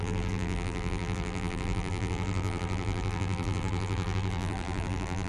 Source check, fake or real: fake